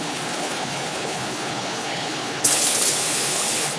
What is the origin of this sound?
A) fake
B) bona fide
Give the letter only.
A